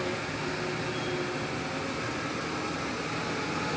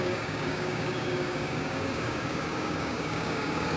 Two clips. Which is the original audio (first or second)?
first